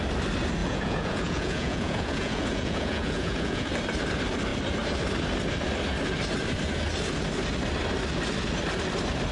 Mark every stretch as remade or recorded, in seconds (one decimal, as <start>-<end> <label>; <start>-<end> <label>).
0.0-0.6 recorded; 0.6-3.7 remade; 3.7-9.3 recorded